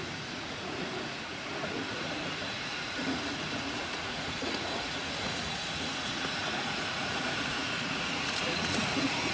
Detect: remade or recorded remade